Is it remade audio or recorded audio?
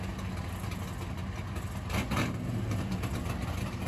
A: recorded